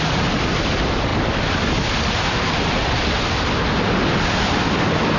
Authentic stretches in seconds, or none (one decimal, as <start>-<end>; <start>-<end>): 0.0-5.2